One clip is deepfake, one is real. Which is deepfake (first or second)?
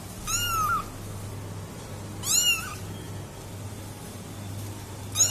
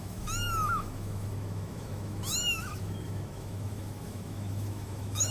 second